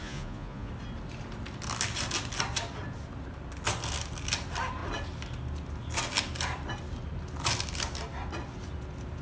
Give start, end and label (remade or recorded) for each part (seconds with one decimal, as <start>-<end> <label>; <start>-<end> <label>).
0.0-0.7 remade; 0.7-9.2 recorded